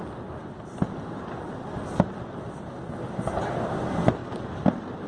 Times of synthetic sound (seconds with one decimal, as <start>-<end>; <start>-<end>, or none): 4.2-5.1